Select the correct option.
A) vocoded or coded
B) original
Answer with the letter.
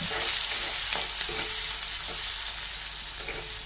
B